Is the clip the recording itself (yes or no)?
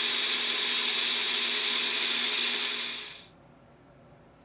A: yes